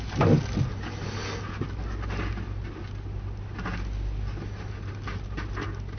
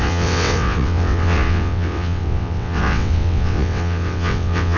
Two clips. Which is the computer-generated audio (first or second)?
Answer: second